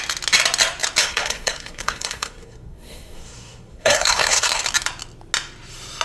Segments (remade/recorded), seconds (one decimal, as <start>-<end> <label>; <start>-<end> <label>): 0.0-1.0 recorded; 1.0-4.6 remade; 4.6-6.0 recorded